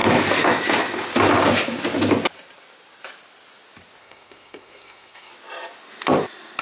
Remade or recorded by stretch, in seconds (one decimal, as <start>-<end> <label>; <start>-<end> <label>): 0.0-4.0 recorded; 4.0-5.3 remade; 5.3-6.6 recorded